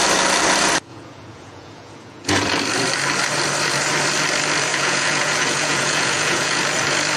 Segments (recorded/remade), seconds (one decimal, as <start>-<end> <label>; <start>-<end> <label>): 0.0-0.9 recorded; 0.9-2.3 remade; 2.3-4.7 recorded; 4.7-6.6 remade; 6.6-7.2 recorded